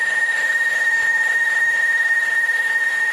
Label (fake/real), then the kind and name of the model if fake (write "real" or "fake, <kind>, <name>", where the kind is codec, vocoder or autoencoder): fake, autoencoder, DAC-VAE